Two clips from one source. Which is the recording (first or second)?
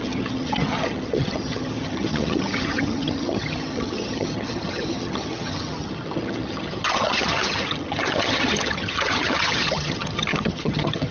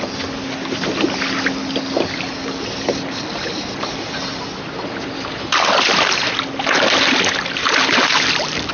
second